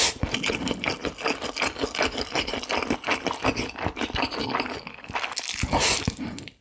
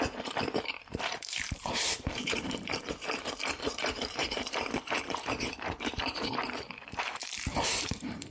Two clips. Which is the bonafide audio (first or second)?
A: first